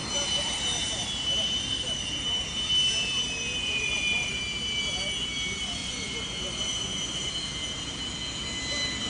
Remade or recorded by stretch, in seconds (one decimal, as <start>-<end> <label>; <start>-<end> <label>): 0.0-3.6 recorded; 3.6-4.4 remade; 4.4-5.8 recorded; 5.8-7.3 remade; 7.3-9.1 recorded